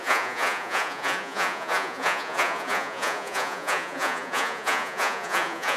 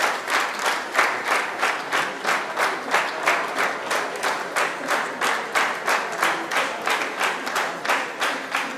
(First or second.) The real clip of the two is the second